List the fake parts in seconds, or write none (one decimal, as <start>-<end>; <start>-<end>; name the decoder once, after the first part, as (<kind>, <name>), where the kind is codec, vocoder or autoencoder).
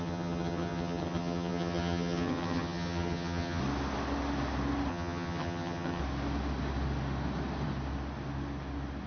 0.0-3.6 (vocoder, HiFi-GAN); 4.9-6.0